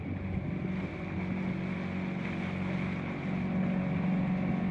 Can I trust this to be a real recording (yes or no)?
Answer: yes